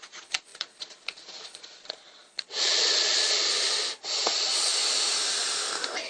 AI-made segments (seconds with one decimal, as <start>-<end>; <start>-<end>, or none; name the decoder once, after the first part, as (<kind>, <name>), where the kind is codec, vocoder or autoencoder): 0.0-3.5 (vocoder, Vocos); 4.0-4.7

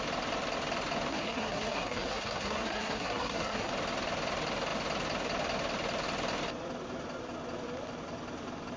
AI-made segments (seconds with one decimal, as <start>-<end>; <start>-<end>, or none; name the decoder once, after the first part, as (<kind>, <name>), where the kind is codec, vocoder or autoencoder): 1.1-3.7 (codec, SNAC)

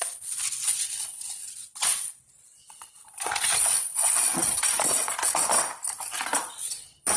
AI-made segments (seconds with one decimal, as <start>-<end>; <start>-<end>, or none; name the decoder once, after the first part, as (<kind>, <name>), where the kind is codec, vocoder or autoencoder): 0.0-5.4 (vocoder, Vocos); 6.4-7.2

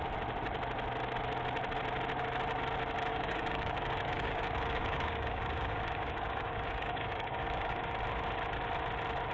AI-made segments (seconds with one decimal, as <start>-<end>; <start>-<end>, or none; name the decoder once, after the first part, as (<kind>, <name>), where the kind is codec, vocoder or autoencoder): 3.1-8.0 (codec, DAC)

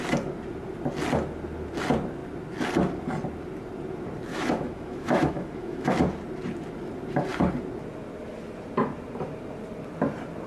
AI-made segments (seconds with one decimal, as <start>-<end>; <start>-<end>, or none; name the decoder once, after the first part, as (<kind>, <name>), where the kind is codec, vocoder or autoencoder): 4.3-5.9 (autoencoder, DAC-VAE)

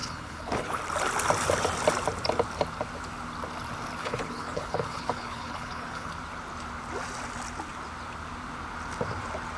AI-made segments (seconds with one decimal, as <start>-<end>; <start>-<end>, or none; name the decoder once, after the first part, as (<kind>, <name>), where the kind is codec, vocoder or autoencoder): 0.0-0.8 (codec, HILCodec); 4.0-6.1

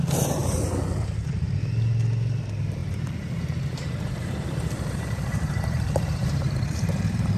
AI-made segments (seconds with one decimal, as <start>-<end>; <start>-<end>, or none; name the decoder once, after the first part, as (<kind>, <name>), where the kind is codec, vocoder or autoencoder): 2.8-7.4 (vocoder, BigVGAN v2)